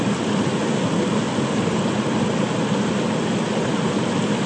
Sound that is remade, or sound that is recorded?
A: recorded